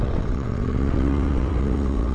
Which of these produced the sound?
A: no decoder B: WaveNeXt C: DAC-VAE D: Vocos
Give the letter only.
B